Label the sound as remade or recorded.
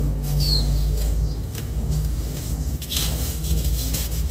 remade